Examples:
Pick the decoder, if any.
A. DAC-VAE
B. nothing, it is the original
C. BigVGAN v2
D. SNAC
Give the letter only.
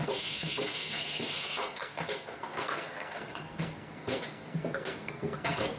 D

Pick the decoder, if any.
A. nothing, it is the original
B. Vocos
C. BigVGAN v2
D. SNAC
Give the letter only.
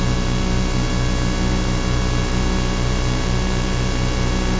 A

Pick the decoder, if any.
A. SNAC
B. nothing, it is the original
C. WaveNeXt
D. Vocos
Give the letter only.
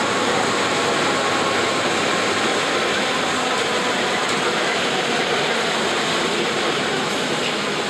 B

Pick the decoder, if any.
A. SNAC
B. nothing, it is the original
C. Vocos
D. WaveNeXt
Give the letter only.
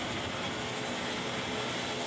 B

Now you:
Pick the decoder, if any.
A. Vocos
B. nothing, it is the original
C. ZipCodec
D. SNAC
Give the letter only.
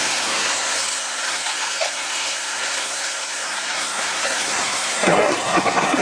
D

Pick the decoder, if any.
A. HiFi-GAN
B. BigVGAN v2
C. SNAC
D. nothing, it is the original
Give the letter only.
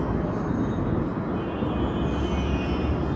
D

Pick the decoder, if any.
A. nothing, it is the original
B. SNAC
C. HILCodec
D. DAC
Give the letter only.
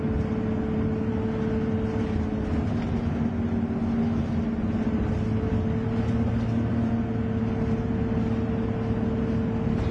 A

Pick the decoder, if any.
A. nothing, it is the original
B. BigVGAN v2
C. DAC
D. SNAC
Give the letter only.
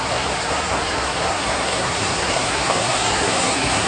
D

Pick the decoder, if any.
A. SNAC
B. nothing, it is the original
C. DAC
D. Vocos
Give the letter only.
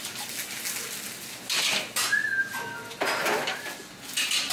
B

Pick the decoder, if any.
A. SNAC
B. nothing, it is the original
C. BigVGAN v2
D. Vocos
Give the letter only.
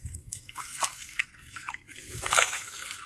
A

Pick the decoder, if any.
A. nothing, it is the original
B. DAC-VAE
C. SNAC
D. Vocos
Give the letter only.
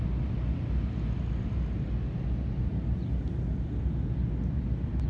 A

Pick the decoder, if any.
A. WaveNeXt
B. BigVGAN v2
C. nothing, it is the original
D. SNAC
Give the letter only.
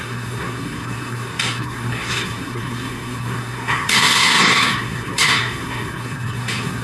D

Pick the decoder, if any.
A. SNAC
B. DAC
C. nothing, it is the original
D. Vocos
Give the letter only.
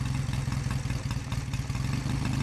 C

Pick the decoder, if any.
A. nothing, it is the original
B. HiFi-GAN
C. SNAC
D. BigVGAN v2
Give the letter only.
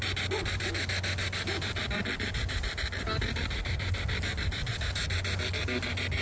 A